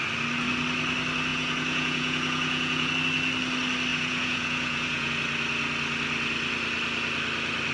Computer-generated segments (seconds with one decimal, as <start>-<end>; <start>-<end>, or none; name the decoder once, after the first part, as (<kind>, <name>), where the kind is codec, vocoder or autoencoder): 1.3-2.9 (vocoder, Vocos); 3.9-5.1